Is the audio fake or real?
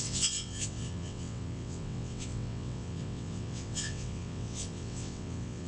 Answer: fake